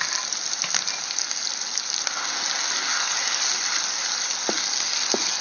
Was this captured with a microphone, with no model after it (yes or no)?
yes